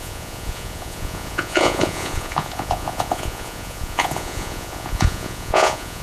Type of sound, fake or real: fake